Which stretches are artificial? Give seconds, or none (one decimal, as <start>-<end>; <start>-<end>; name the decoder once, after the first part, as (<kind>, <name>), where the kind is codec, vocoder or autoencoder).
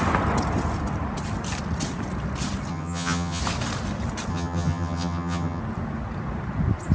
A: 2.7-3.4 (vocoder, HiFi-GAN); 4.3-5.6